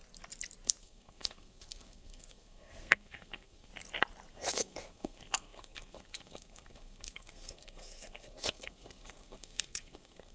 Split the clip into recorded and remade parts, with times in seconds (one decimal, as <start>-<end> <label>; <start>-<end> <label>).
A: 0.0-0.8 recorded; 0.8-3.7 remade; 3.7-4.3 recorded; 4.3-10.3 remade